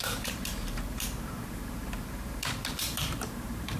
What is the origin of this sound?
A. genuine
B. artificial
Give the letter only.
B